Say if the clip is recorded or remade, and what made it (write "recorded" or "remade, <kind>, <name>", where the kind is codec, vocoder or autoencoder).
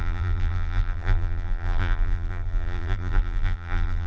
remade, vocoder, BigVGAN v2